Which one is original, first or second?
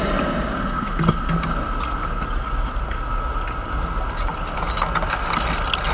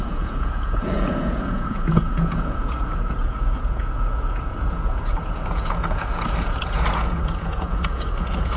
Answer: first